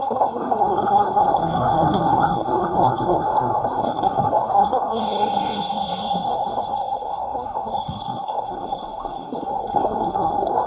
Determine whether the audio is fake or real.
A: fake